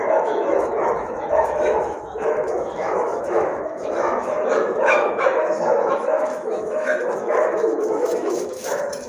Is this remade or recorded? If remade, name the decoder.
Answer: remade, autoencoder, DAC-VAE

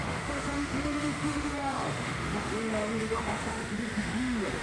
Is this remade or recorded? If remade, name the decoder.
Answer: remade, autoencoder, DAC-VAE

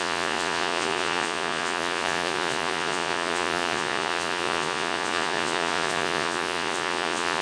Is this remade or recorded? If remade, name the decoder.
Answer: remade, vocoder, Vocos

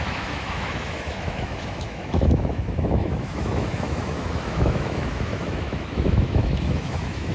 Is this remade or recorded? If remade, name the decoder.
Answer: remade, autoencoder, DAC-VAE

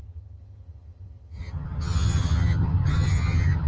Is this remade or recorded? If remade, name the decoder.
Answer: remade, vocoder, HiFi-GAN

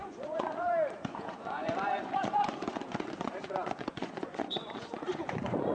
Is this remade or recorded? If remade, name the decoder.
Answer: remade, vocoder, Vocos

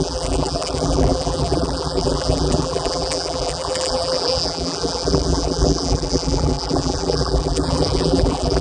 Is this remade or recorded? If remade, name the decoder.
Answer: remade, vocoder, BigVGAN v2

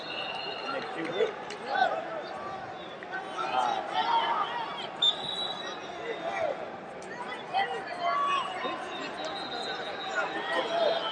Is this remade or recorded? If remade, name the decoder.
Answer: recorded